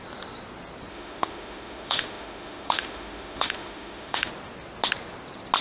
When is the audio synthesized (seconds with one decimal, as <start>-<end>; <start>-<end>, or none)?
0.9-4.3